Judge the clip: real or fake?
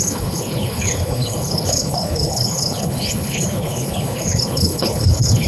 fake